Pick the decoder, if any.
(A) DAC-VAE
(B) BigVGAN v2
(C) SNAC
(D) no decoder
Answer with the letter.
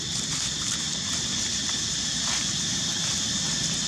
B